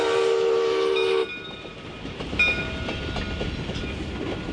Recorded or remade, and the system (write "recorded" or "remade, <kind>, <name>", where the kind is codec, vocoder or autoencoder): recorded